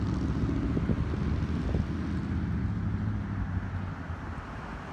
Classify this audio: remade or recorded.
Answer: recorded